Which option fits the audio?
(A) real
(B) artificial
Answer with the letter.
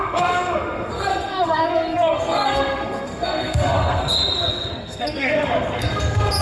B